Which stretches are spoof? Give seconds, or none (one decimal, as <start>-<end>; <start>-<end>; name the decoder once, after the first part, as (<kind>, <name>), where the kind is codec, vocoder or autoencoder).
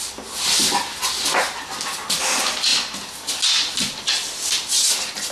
none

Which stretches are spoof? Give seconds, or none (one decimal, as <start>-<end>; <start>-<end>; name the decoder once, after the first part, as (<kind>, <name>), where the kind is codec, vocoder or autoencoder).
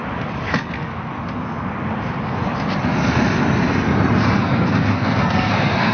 0.5-0.9 (codec, SNAC); 4.4-5.9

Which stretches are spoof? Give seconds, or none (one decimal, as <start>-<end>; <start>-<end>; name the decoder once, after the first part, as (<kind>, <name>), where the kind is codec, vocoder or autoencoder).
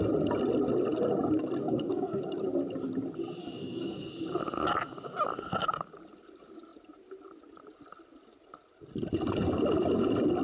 1.6-2.2 (codec, SNAC); 3.4-4.1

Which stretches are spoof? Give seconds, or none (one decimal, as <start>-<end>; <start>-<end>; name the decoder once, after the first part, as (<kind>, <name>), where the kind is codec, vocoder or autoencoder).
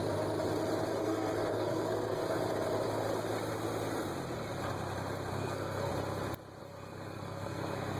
1.0-2.2 (codec, SNAC); 5.3-5.9; 6.6-8.0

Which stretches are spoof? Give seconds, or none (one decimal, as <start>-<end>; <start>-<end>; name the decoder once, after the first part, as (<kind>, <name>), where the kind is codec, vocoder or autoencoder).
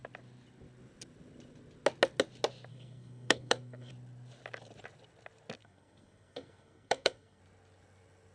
2.7-3.9 (codec, SNAC); 5.6-7.4